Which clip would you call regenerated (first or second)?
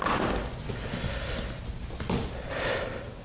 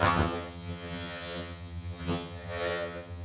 second